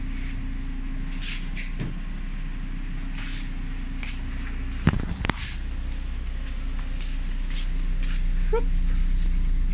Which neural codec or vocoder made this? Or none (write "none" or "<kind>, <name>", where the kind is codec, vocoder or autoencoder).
none